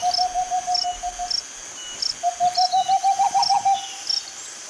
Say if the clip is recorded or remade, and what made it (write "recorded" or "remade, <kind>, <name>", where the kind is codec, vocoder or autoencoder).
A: recorded